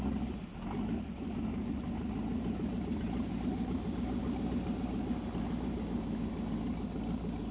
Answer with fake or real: real